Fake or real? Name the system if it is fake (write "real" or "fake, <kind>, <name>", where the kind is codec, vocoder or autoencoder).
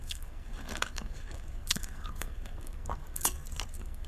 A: fake, codec, SNAC